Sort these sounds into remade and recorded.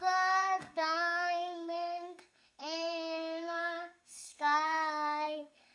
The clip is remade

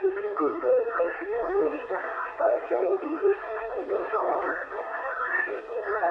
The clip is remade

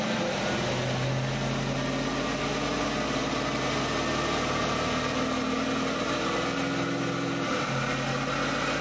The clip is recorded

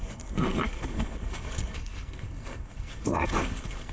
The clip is remade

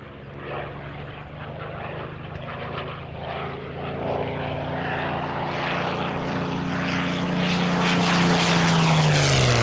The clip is recorded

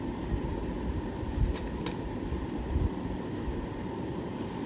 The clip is recorded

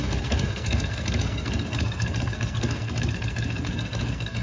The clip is remade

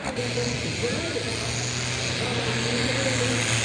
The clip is recorded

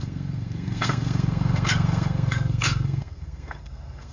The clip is remade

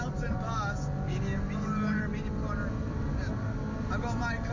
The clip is recorded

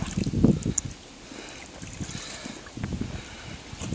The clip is recorded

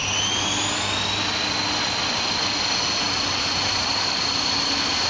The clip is recorded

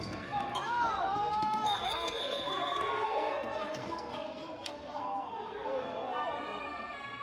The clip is remade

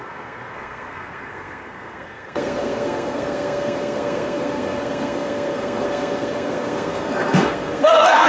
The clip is remade